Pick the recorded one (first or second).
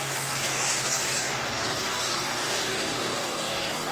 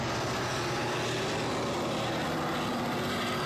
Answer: second